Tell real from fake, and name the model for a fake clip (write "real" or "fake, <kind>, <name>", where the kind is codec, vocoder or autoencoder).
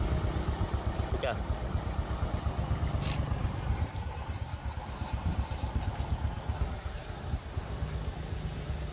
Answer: real